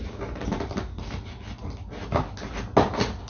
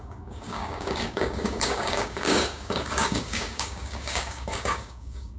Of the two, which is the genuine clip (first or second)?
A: first